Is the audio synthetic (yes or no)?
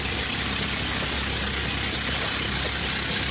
no